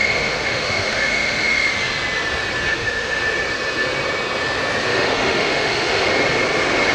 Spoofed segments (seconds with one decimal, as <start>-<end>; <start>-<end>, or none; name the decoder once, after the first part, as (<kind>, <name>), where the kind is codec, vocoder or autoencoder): 0.0-1.7 (autoencoder, DAC-VAE); 2.7-3.2; 4.9-6.1